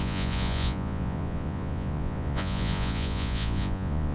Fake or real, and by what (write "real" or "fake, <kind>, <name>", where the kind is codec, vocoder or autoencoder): fake, vocoder, Vocos